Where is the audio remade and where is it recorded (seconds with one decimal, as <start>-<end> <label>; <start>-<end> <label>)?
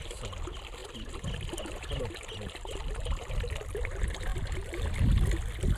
0.0-5.8 recorded